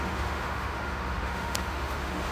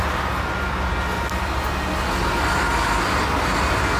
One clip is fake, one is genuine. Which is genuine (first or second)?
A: second